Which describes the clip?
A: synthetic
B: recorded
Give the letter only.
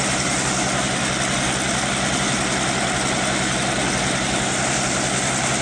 B